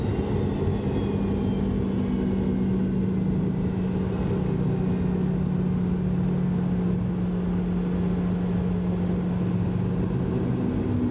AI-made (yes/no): no